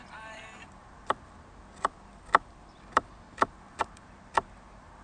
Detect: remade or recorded recorded